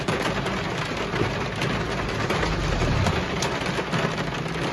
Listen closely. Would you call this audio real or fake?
real